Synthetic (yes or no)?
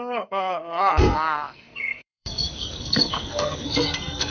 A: yes